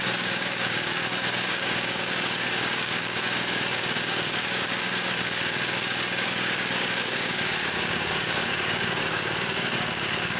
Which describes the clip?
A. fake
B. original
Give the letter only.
A